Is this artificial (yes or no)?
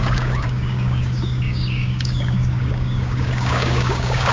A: yes